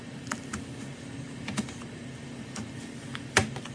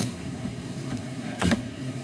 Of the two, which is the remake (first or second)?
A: second